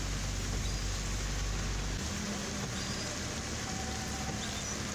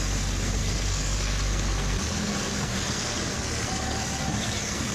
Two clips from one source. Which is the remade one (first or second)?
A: second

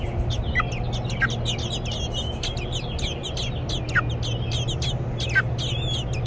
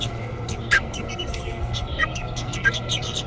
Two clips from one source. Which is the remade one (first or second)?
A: second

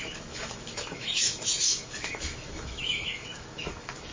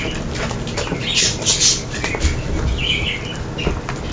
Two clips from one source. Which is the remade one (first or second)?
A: first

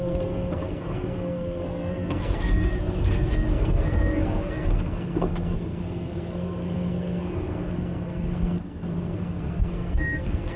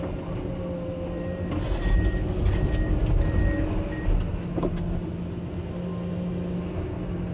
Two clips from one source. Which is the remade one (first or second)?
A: first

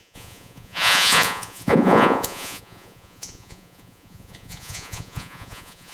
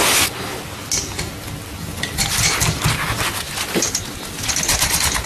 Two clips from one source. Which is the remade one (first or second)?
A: first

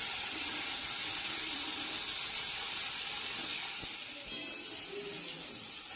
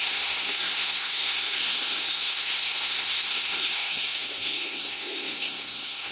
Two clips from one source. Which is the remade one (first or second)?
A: second